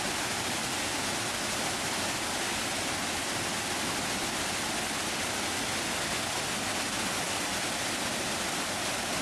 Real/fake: real